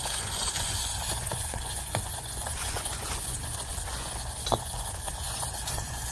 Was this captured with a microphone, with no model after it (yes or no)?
no